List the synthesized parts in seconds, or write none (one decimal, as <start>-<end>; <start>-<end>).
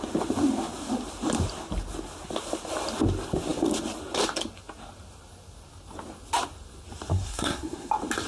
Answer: 7.1-7.9